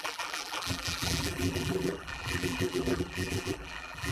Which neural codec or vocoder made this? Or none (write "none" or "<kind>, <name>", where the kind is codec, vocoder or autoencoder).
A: vocoder, BigVGAN v2